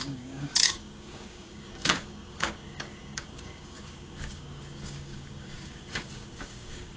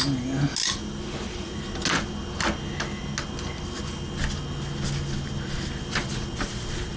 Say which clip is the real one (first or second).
second